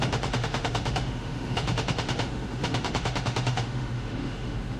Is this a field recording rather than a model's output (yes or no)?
no